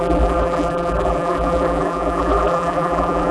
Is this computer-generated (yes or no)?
yes